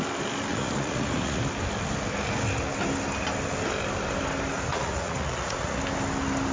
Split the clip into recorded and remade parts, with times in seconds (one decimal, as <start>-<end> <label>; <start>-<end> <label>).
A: 0.0-0.5 recorded; 0.5-1.4 remade; 1.4-4.7 recorded; 4.7-5.8 remade; 5.8-6.5 recorded